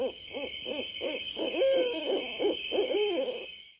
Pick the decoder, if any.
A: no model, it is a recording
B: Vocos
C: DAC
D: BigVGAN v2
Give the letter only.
C